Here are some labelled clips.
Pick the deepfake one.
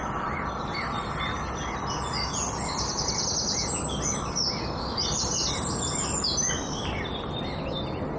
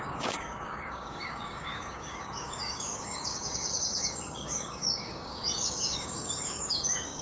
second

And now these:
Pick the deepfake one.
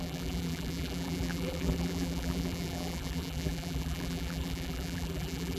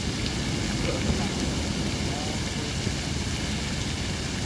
first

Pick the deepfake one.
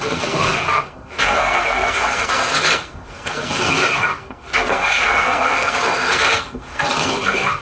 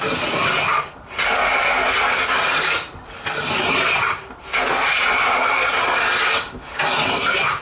first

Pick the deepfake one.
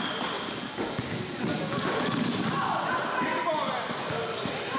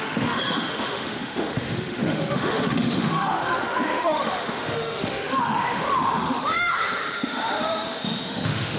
second